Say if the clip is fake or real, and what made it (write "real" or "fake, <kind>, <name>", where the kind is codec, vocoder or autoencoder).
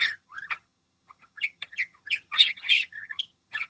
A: fake, vocoder, HiFi-GAN